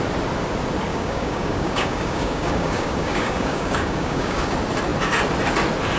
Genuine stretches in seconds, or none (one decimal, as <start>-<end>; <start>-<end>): 0.0-0.9; 4.5-6.0

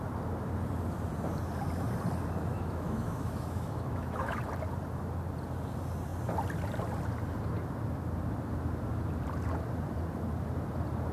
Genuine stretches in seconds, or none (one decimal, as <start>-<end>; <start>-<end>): 0.0-2.5; 4.4-11.1

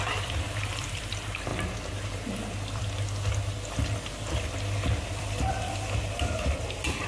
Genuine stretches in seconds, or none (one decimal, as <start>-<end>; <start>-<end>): 1.5-5.1

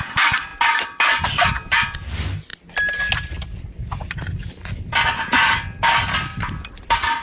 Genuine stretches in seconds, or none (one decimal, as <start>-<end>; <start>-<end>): 0.0-7.2

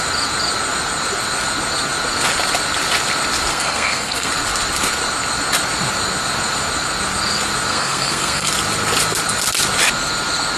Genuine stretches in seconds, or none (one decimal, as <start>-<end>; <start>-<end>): 0.0-3.5; 4.3-7.7; 8.5-10.6